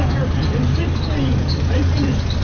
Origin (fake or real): fake